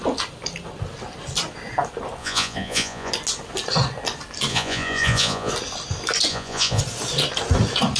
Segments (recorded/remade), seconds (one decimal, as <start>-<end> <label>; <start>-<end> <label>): 0.0-2.2 recorded; 2.2-3.1 remade; 3.1-4.5 recorded; 4.5-5.5 remade; 5.5-6.3 recorded; 6.3-6.8 remade; 6.8-8.0 recorded